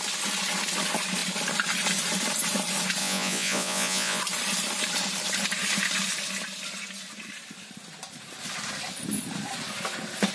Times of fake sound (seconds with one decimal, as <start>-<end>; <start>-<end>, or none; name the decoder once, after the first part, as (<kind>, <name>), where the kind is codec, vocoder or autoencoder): 3.0-4.2 (vocoder, Vocos)